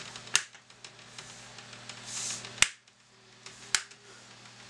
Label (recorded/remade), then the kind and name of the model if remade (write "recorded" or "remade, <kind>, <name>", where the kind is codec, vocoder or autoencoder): recorded